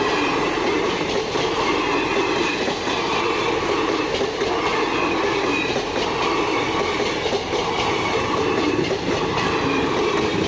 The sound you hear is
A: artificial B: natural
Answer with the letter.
B